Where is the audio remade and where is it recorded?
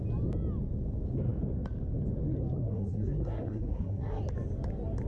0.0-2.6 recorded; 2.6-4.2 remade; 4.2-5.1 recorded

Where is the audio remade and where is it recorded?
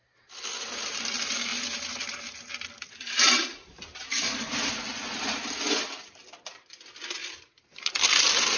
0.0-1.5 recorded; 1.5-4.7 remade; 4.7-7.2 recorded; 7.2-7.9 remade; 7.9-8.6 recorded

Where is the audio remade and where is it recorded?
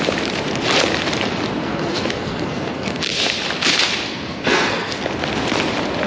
0.0-1.6 recorded; 1.6-3.0 remade; 3.0-4.1 recorded; 4.1-5.0 remade; 5.0-6.1 recorded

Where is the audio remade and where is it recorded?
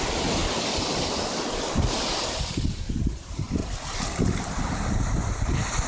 0.0-5.9 recorded